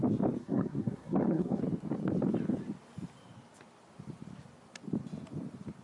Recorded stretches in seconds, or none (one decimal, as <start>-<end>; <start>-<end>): 0.0-0.4; 1.6-5.8